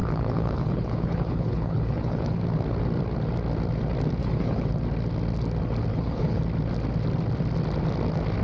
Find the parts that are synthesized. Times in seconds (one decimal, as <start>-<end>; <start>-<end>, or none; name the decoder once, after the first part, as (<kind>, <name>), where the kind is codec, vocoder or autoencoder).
0.0-2.4 (codec, HILCodec); 4.2-4.7; 5.9-6.4